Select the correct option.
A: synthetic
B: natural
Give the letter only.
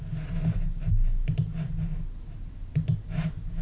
B